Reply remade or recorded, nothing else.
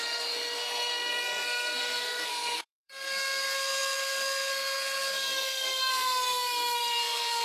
remade